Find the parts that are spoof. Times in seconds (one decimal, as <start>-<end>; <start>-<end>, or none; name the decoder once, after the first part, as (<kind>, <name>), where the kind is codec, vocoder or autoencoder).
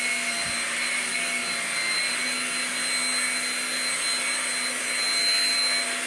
none